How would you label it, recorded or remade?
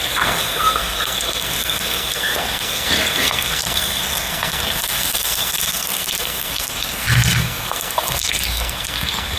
remade